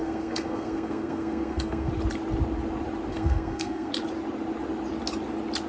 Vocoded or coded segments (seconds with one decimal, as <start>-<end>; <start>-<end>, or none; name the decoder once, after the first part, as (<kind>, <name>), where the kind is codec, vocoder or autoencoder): 0.0-1.9 (codec, SNAC); 3.1-3.9